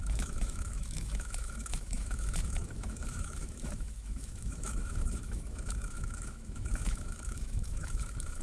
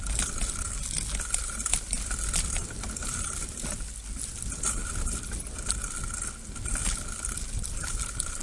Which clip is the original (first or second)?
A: second